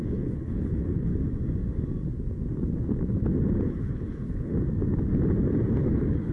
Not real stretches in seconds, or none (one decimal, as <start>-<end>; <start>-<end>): 0.0-1.1; 3.7-4.5; 5.8-6.3